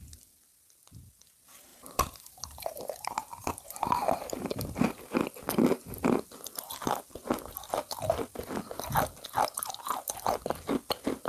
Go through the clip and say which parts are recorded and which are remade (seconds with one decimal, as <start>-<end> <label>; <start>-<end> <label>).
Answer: 0.0-1.7 recorded; 1.7-5.2 remade; 5.2-11.3 recorded